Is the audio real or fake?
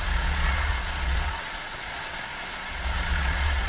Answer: fake